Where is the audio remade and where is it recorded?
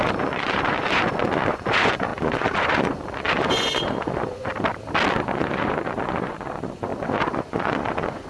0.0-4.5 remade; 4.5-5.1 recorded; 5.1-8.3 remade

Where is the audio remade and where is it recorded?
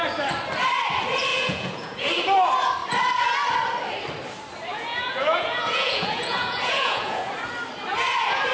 0.0-1.3 recorded; 1.3-2.1 remade; 2.1-4.7 recorded; 4.7-7.3 remade; 7.3-8.5 recorded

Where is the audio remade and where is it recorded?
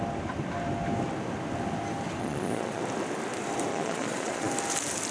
0.0-2.2 recorded; 2.2-2.8 remade; 2.8-3.7 recorded; 3.7-4.5 remade; 4.5-5.1 recorded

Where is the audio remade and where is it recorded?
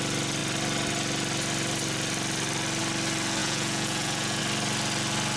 0.0-3.4 recorded; 3.4-4.4 remade; 4.4-5.4 recorded